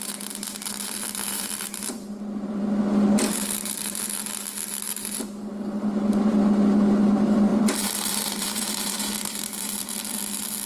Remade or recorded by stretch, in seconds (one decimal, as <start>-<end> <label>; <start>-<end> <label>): 0.0-1.2 recorded; 1.2-2.6 remade; 2.6-7.5 recorded; 7.5-9.9 remade; 9.9-10.7 recorded